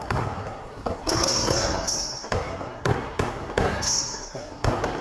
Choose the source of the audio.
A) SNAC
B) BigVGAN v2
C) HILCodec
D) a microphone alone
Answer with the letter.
A